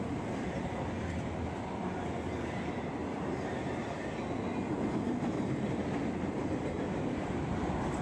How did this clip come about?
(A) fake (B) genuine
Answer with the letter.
B